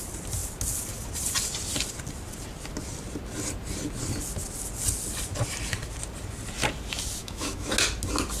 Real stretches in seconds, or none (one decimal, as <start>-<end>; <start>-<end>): 0.0-7.2; 7.7-8.4